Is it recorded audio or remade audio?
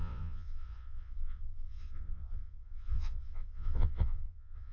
remade